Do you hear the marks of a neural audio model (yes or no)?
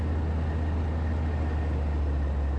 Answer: no